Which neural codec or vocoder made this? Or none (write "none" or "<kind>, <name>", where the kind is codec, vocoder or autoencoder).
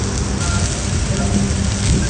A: none